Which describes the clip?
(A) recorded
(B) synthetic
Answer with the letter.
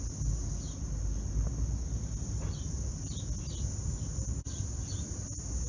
A